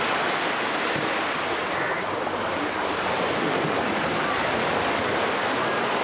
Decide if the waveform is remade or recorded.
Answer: recorded